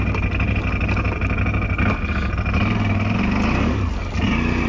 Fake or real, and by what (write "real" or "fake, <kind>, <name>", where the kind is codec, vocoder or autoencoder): real